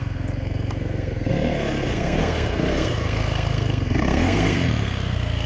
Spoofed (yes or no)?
yes